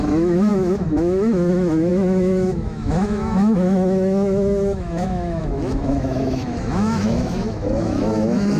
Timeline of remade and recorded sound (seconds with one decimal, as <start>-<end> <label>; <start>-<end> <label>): 0.0-8.6 remade